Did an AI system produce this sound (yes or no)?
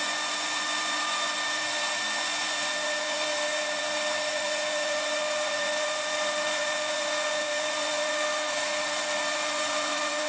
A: yes